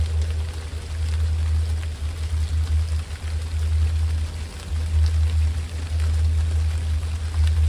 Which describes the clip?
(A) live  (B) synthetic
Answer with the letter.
A